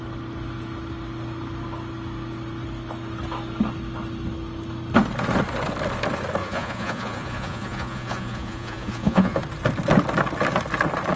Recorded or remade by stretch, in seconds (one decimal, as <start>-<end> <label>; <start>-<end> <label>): 0.0-6.4 recorded; 6.4-9.4 remade; 9.4-11.2 recorded